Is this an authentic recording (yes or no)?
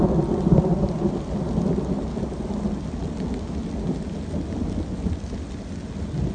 yes